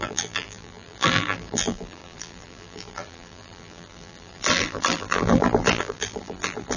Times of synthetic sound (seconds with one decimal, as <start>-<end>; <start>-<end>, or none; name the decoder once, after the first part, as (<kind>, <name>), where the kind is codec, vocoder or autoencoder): 0.0-6.8 (vocoder, BigVGAN v2)